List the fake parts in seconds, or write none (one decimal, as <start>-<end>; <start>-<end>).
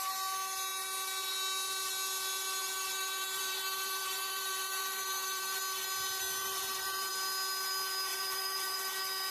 2.6-5.6; 6.4-7.1; 8.1-8.8